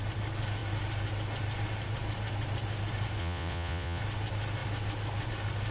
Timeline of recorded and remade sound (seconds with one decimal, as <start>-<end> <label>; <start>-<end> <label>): 0.0-3.2 recorded; 3.2-4.0 remade; 4.0-5.7 recorded